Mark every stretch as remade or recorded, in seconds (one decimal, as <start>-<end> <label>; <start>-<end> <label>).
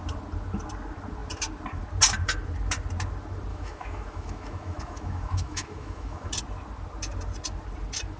0.0-3.5 recorded; 3.5-6.3 remade; 6.3-8.2 recorded